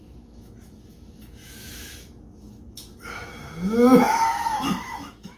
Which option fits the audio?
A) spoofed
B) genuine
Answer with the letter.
A